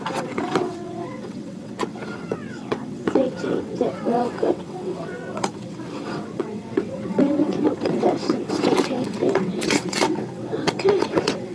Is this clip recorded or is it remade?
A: remade